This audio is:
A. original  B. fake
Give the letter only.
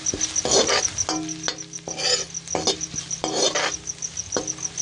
A